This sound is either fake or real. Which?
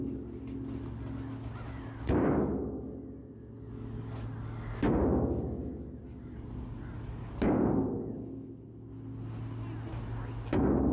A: real